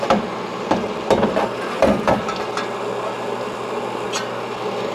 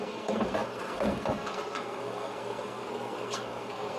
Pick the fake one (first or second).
second